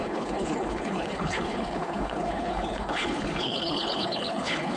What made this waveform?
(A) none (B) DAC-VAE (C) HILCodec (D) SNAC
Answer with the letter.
C